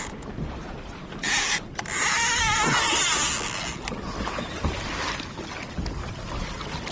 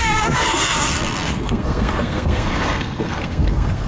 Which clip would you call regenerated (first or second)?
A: second